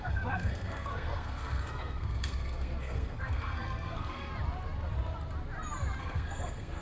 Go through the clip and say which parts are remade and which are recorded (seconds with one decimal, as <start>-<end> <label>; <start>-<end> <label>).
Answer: 0.0-4.3 remade; 4.3-6.0 recorded; 6.0-6.8 remade